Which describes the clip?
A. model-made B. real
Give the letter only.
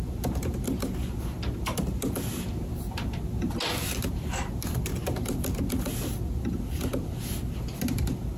B